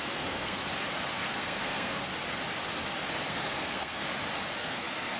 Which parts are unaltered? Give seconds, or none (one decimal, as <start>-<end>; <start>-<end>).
0.6-1.1; 2.1-3.3; 4.0-4.6